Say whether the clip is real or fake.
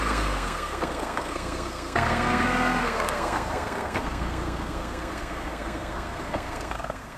fake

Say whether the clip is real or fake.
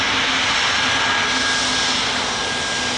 real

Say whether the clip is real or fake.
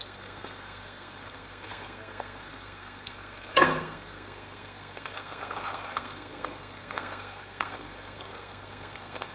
fake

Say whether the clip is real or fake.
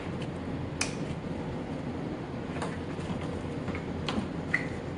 real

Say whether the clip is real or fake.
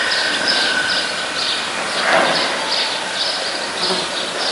real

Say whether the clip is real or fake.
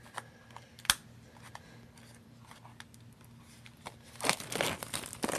real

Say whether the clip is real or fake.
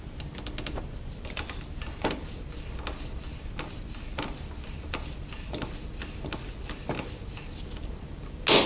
real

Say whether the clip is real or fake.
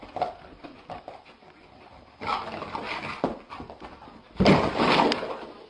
real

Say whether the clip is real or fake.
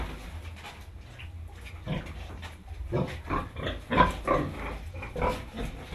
real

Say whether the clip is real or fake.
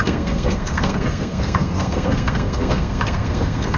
fake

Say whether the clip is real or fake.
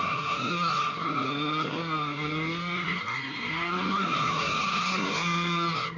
fake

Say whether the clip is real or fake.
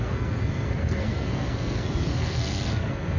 fake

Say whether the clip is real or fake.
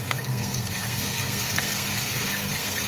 fake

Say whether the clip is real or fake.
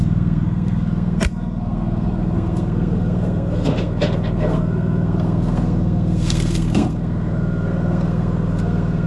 fake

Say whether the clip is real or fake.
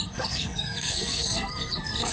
fake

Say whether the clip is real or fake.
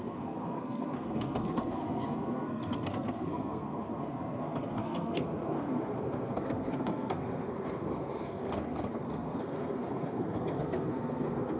fake